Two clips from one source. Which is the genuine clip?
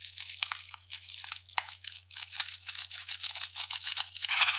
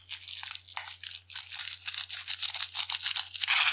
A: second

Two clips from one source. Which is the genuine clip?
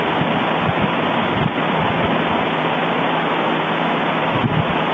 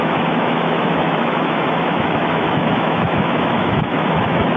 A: first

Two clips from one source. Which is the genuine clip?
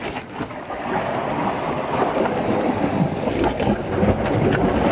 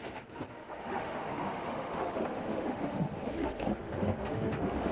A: first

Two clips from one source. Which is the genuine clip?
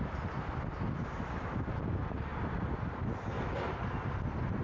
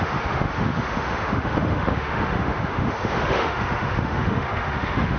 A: first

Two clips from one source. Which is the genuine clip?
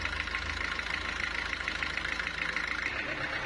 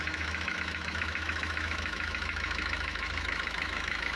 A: first